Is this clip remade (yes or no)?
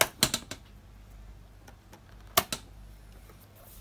no